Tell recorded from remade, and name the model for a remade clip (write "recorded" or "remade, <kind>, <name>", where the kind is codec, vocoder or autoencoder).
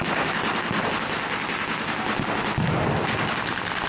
recorded